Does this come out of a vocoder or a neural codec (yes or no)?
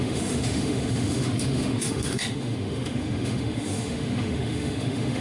yes